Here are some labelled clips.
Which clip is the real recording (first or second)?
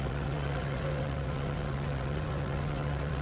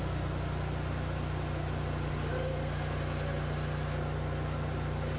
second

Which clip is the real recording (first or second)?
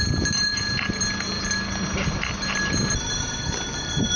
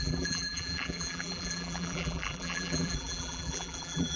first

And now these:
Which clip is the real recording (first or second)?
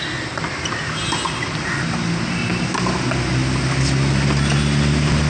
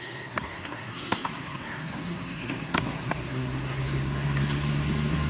first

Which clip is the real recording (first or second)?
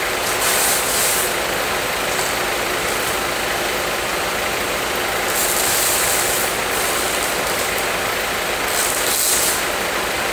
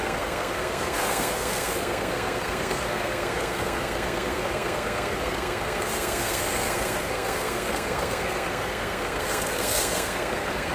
first